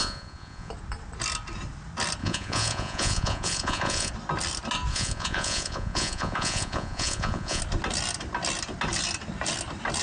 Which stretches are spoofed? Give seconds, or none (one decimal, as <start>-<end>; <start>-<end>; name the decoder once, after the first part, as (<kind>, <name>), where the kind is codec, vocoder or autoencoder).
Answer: 0.0-0.7 (vocoder, Vocos); 2.2-4.1; 4.9-7.6